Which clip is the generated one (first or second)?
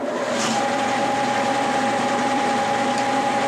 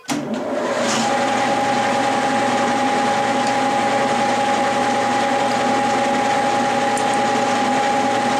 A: first